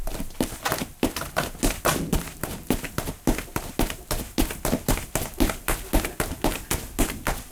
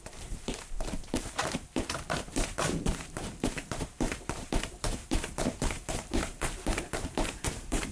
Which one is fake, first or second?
second